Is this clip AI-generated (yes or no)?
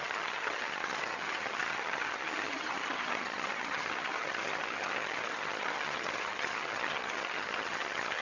yes